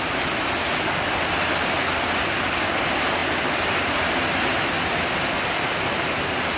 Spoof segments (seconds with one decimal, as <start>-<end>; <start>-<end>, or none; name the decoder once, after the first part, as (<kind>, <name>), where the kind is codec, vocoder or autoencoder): none